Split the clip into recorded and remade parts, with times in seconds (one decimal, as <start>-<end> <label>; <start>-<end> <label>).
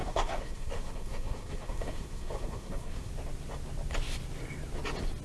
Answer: 0.0-3.1 remade; 3.1-5.2 recorded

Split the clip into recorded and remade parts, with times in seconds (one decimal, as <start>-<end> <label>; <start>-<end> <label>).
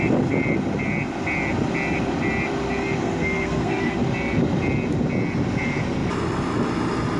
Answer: 0.0-3.0 recorded; 3.0-4.0 remade; 4.0-7.2 recorded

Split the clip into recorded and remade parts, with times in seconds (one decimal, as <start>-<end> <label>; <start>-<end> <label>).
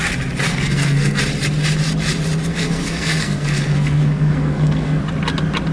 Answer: 0.0-0.5 recorded; 0.5-1.2 remade; 1.2-2.5 recorded; 2.5-5.0 remade; 5.0-5.7 recorded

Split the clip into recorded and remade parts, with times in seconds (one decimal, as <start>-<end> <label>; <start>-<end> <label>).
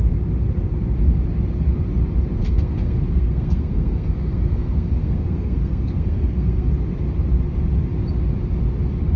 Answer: 0.0-2.4 recorded; 2.4-6.7 remade; 6.7-9.2 recorded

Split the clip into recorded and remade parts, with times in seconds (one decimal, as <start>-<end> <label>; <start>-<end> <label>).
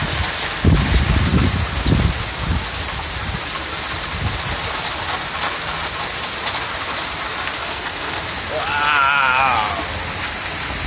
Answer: 0.0-7.6 recorded; 7.6-8.2 remade; 8.2-10.9 recorded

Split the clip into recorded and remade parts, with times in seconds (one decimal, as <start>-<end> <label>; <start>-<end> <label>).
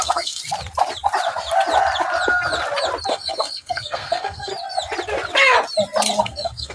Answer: 0.0-0.4 remade; 0.4-3.1 recorded; 3.1-4.5 remade; 4.5-6.2 recorded; 6.2-6.7 remade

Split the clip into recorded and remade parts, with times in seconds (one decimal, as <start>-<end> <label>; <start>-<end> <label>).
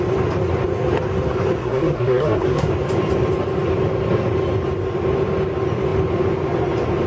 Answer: 0.0-1.6 recorded; 1.6-2.7 remade; 2.7-7.1 recorded